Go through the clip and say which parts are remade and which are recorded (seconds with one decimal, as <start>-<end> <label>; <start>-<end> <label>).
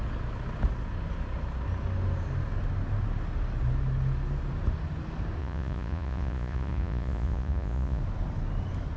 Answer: 0.0-5.4 recorded; 5.4-8.0 remade; 8.0-9.0 recorded